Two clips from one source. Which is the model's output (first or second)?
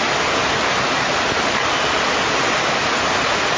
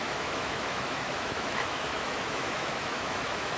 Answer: second